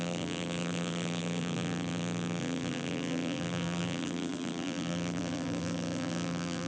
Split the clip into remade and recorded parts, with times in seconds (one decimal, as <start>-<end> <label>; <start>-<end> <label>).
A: 0.0-6.7 remade